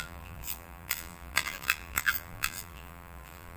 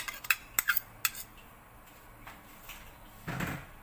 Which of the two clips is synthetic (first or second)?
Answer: first